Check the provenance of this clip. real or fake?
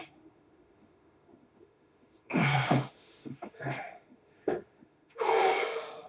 fake